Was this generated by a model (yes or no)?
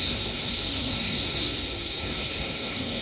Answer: yes